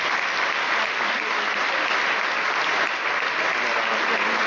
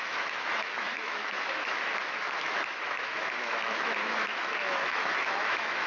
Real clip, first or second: first